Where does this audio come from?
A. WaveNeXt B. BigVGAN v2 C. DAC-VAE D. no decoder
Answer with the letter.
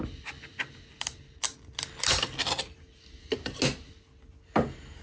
D